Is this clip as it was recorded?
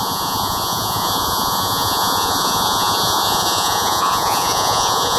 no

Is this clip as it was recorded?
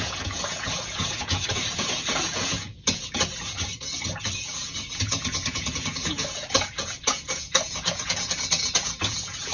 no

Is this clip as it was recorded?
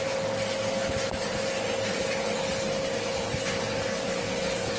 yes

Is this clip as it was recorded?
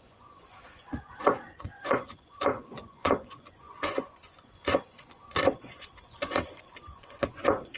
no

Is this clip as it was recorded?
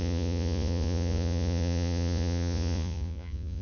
no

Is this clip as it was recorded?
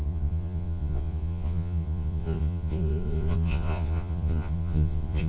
no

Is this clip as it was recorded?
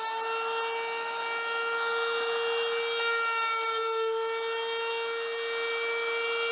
yes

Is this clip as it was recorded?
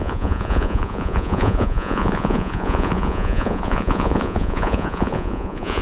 no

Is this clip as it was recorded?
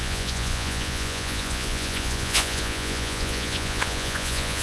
no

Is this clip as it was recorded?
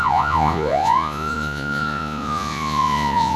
no